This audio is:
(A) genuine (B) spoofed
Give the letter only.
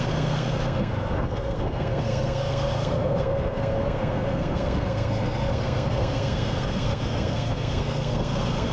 B